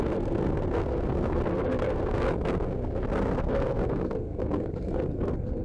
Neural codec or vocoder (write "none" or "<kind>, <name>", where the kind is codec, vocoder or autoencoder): codec, SNAC